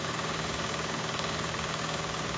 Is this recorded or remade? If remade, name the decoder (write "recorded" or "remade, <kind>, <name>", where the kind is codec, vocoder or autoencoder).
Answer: remade, codec, DAC